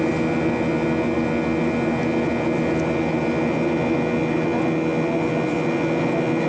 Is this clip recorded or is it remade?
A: recorded